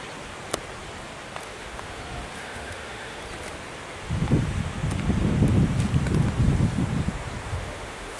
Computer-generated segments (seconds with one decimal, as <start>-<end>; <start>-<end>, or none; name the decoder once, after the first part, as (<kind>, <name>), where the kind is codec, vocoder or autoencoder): 1.4-2.0 (autoencoder, DAC-VAE); 2.4-3.2; 7.5-8.2